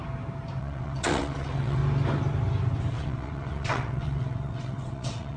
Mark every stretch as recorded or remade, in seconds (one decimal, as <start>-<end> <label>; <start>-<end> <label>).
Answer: 0.0-0.6 recorded; 0.6-1.8 remade; 1.8-2.9 recorded; 2.9-5.4 remade